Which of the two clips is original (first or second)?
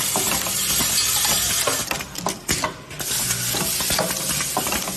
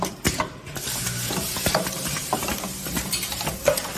first